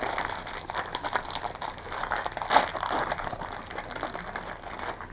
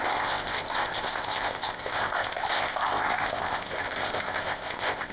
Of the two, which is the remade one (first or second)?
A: second